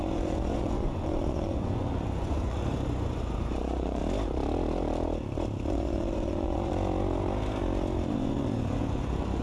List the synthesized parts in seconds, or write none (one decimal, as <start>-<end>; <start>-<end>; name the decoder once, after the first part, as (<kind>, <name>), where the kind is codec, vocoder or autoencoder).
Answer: 0.0-4.0 (vocoder, Vocos); 5.7-6.7; 8.1-9.4